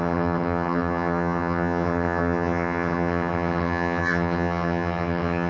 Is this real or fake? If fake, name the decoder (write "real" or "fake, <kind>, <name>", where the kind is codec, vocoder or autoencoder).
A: fake, vocoder, HiFi-GAN